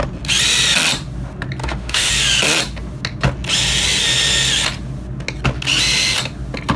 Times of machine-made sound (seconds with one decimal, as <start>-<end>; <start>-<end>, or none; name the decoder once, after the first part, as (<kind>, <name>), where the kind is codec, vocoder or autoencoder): 1.6-2.1 (autoencoder, DAC-VAE)